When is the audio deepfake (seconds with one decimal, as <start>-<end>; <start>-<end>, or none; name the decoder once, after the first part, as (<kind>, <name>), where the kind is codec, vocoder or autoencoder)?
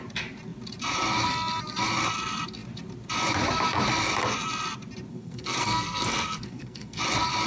5.1-7.0 (codec, SNAC)